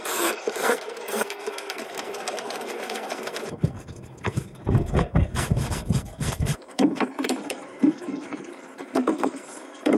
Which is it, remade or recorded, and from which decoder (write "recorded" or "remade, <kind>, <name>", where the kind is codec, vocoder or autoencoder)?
remade, codec, SNAC